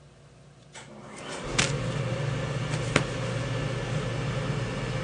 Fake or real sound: real